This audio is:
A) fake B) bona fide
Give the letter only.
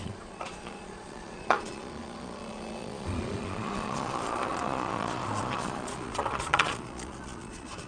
A